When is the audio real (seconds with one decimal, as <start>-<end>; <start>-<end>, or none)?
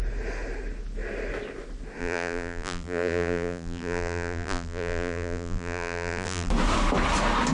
0.0-2.0; 6.5-7.5